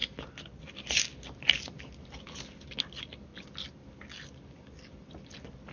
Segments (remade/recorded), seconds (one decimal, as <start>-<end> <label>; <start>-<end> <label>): 0.0-5.7 recorded